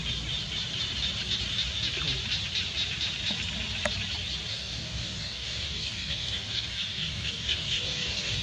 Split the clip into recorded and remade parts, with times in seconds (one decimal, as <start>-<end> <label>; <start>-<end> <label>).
0.0-4.5 recorded; 4.5-8.4 remade